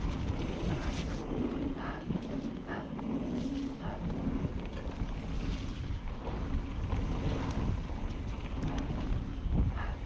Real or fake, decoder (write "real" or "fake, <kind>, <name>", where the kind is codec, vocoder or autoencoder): real